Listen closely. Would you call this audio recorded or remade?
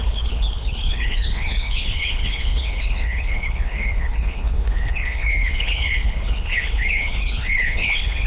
remade